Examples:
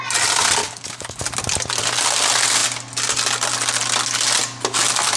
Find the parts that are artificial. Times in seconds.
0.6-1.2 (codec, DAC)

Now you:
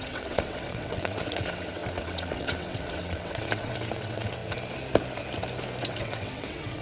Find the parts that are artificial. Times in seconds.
0.0-4.4 (vocoder, WaveNeXt); 5.8-6.8

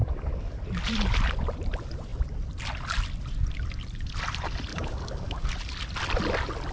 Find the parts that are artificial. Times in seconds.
0.0-0.6 (codec, DAC); 4.7-5.5

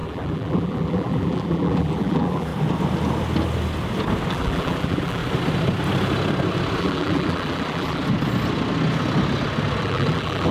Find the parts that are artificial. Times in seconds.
0.0-2.5 (vocoder, BigVGAN v2); 4.3-5.2; 6.8-8.0; 9.8-10.5

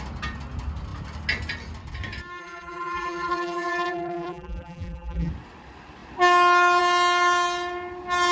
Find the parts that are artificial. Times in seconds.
2.4-5.3 (vocoder, BigVGAN v2)